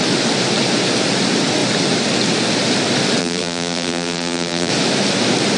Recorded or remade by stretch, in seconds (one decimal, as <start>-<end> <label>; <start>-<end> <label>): 0.0-3.2 recorded; 3.2-4.7 remade; 4.7-5.6 recorded